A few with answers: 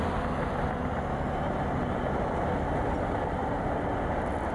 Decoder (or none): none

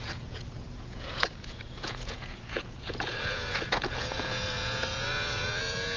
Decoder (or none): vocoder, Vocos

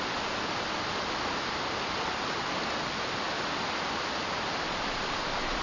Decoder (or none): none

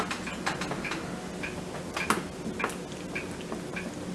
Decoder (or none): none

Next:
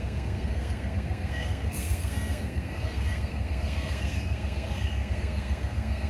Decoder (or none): codec, SNAC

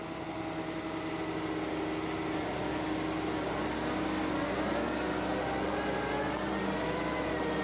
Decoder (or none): none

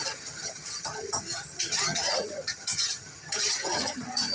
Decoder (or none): vocoder, HiFi-GAN